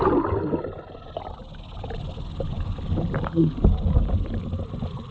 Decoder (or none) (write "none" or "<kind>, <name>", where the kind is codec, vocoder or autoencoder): none